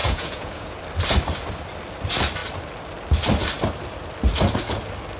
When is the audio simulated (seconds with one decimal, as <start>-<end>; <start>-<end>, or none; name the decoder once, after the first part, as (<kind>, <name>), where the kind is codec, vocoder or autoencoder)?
0.0-0.8 (vocoder, Vocos)